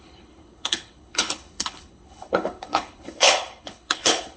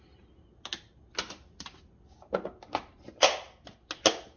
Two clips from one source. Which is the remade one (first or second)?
first